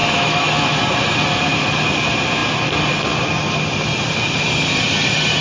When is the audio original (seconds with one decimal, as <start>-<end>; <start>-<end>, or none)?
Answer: 0.8-5.4